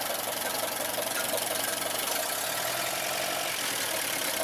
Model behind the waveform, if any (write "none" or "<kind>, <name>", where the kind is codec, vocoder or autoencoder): none